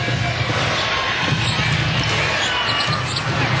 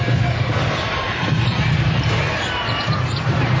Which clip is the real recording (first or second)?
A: first